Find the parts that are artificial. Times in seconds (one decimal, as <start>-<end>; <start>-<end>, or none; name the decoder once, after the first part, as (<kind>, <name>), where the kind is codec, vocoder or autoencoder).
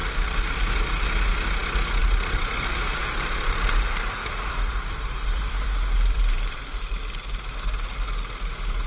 2.0-7.0 (vocoder, BigVGAN v2)